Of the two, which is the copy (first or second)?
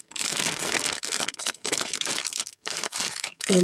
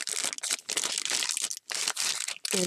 first